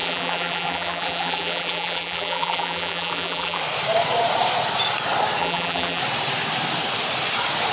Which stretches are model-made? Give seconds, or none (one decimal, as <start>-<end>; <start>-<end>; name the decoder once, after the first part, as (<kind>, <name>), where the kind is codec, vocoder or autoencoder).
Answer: 0.0-3.6 (vocoder, BigVGAN v2); 5.4-6.0

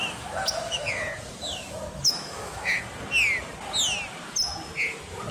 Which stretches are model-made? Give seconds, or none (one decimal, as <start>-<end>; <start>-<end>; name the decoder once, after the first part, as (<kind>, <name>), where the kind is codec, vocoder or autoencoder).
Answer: 0.0-0.9 (autoencoder, DAC-VAE); 1.4-2.8

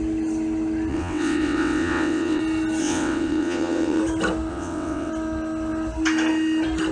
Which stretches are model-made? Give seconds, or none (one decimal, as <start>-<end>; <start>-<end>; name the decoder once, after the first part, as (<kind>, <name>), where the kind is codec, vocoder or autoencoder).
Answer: 0.9-2.4 (vocoder, WaveNeXt); 2.8-4.0; 4.5-5.1

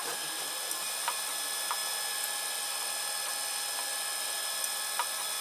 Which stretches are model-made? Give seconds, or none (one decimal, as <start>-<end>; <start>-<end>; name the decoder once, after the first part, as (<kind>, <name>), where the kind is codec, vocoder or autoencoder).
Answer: none